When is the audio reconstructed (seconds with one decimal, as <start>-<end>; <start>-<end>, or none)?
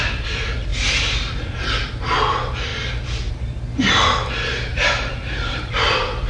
4.7-6.3